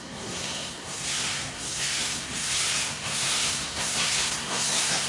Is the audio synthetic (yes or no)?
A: yes